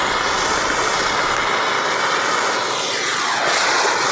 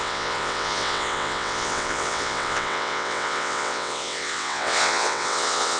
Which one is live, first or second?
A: first